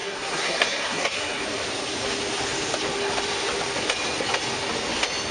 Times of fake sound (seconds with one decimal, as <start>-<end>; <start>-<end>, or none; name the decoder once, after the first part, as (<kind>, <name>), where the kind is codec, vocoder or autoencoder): 0.0-1.4 (codec, SNAC)